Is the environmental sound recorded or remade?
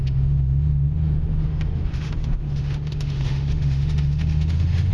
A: remade